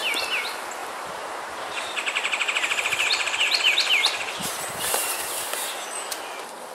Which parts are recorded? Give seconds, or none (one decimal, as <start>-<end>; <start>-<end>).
0.0-0.8; 4.8-6.7

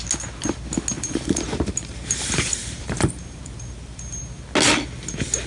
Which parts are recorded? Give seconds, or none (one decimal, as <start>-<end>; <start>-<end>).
0.0-0.9; 4.2-5.5

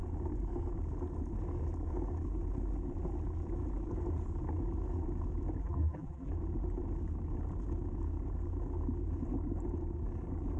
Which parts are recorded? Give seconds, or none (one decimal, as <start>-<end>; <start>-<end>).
0.0-5.6; 6.3-10.6

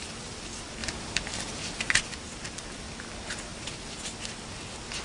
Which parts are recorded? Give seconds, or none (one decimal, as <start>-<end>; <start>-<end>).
0.0-0.8; 1.9-5.0

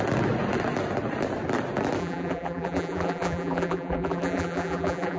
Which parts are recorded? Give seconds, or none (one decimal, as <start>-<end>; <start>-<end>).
0.0-2.0

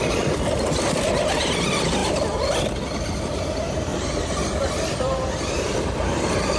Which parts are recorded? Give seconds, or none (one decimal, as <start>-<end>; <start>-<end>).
0.0-3.9

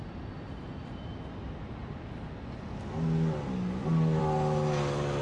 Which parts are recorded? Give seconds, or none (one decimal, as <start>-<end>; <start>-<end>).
0.0-5.2

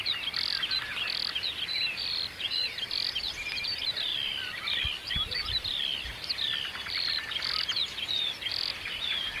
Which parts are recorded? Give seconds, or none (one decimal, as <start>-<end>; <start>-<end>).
none